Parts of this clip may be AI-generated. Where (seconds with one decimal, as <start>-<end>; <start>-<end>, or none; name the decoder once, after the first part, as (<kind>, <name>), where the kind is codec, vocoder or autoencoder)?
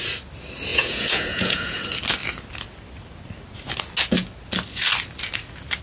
0.7-1.8 (vocoder, Vocos)